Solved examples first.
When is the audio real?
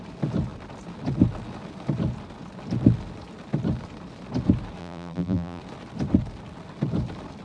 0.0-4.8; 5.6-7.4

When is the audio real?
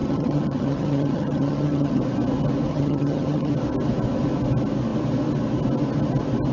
2.0-2.7; 3.5-6.5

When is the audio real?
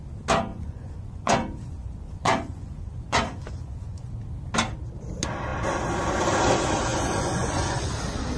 0.0-0.5; 4.1-6.9; 7.9-8.4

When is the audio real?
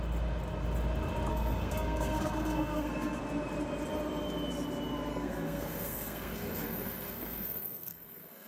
0.0-1.3; 3.2-5.1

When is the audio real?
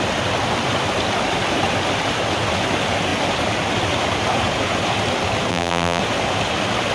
0.0-5.5; 6.0-6.9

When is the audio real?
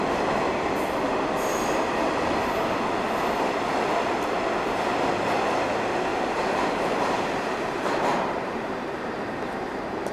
0.0-6.1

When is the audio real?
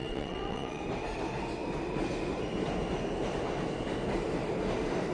0.8-5.1